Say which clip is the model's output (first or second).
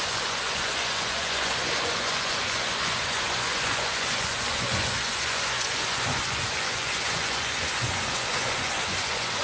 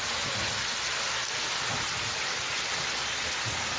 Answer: first